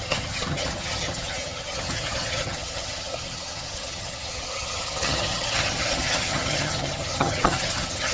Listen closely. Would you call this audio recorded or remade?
remade